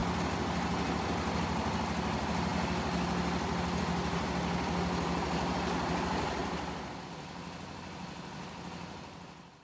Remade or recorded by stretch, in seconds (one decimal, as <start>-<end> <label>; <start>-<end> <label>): 0.0-6.4 recorded; 6.4-6.9 remade; 6.9-9.6 recorded